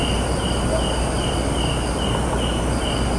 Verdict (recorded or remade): recorded